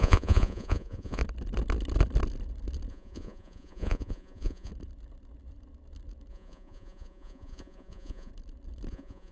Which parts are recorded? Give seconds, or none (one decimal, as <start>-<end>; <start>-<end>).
1.2-2.9; 4.7-6.3; 8.3-8.9